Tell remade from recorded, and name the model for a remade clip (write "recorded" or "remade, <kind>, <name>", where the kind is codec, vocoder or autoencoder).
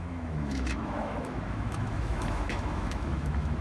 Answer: remade, autoencoder, DAC-VAE